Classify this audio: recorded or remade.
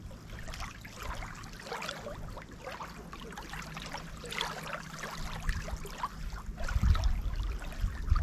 recorded